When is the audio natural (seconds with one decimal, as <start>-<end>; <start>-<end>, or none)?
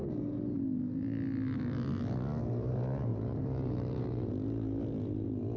0.6-3.1; 4.3-5.6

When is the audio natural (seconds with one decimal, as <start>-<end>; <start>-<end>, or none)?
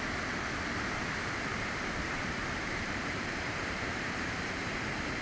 0.0-1.5; 4.6-5.2